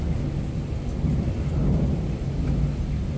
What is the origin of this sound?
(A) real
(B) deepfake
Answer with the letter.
A